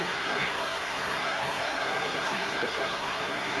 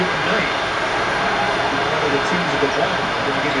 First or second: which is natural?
second